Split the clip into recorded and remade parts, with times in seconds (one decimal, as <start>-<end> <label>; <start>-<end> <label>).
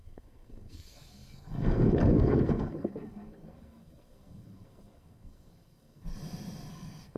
0.0-6.1 remade; 6.1-6.7 recorded; 6.7-7.2 remade